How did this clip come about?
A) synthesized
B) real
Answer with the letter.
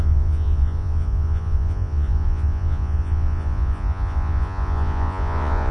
A